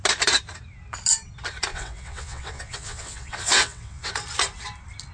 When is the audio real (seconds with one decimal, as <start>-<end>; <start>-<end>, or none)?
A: 0.0-1.7; 4.1-5.1